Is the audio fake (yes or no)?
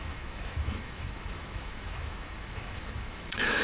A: yes